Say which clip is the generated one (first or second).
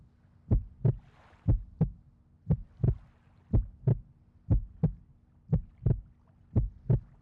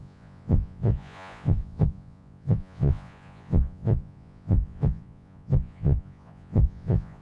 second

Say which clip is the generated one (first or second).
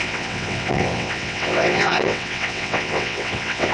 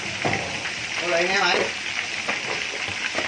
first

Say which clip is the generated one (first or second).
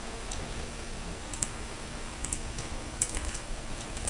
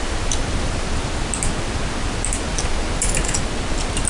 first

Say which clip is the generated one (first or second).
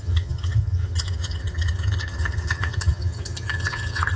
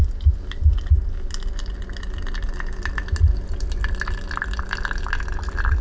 first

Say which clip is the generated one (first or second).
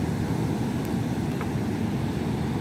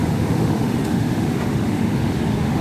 second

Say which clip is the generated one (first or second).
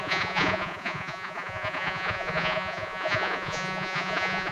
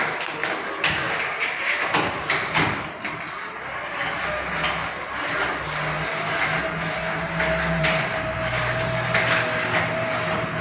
first